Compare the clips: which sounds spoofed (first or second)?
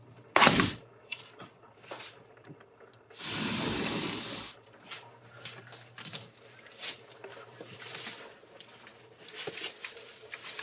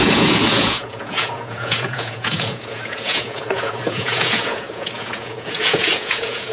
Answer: second